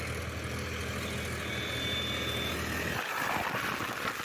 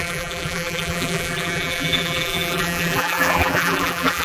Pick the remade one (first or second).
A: second